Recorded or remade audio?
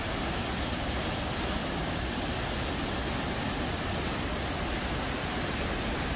recorded